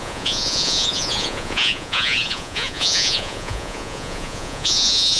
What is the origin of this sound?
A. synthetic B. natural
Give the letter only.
A